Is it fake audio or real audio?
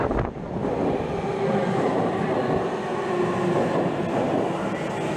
real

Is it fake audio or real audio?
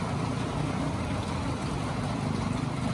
real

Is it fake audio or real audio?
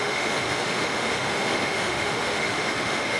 fake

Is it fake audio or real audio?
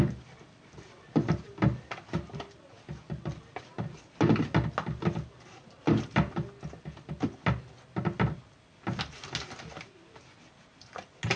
real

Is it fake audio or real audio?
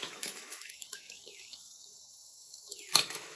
fake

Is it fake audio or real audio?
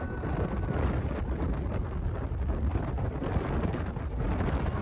real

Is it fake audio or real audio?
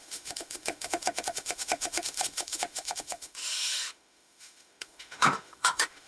fake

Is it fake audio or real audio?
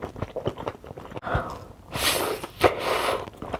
real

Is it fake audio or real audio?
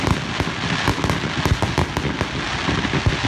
real